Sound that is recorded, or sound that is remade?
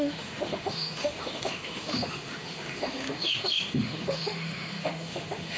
remade